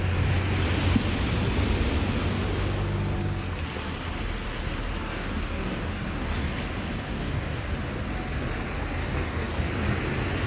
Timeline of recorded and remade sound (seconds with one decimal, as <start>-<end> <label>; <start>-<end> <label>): 0.0-5.1 recorded; 5.1-6.5 remade; 6.5-7.1 recorded; 7.1-7.6 remade; 7.6-9.0 recorded; 9.0-9.7 remade; 9.7-10.5 recorded